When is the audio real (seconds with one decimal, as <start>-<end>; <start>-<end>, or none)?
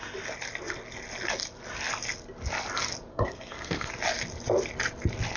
0.0-3.1; 3.9-5.4